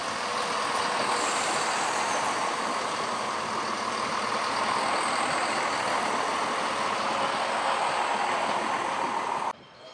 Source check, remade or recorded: recorded